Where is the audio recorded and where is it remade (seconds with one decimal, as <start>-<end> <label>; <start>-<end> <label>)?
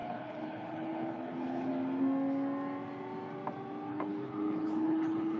0.0-1.7 remade; 1.7-3.9 recorded; 3.9-5.4 remade